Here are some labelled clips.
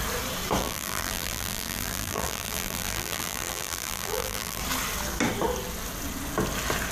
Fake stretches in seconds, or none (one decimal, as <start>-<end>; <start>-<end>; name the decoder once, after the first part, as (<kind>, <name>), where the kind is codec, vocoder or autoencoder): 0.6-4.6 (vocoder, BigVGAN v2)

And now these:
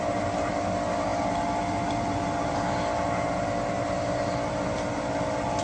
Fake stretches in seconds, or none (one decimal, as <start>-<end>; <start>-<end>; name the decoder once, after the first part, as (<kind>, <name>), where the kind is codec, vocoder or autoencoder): none

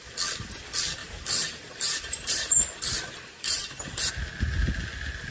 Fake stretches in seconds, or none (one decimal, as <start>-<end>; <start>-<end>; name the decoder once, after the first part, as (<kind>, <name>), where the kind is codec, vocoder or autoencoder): 1.0-4.1 (vocoder, BigVGAN v2)

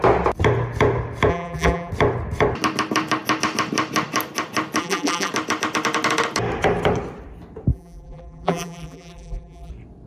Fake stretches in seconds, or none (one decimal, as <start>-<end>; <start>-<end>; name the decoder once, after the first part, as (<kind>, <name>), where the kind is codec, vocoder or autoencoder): 1.3-1.9 (vocoder, BigVGAN v2); 4.8-5.3; 7.7-9.7